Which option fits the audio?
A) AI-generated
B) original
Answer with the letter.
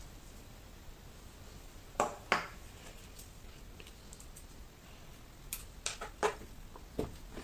B